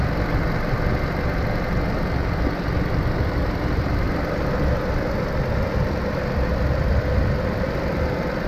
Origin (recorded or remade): recorded